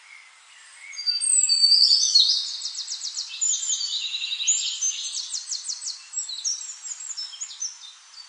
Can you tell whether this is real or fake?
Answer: real